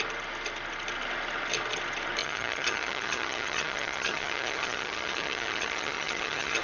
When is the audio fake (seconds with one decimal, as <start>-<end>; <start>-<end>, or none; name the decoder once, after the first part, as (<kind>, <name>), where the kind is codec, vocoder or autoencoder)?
2.2-6.6 (vocoder, HiFi-GAN)